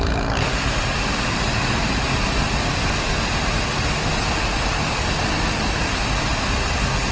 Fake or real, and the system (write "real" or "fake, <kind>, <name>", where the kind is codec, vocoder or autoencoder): real